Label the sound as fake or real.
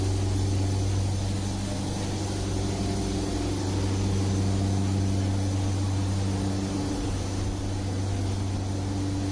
real